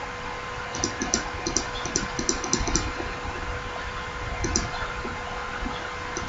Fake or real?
real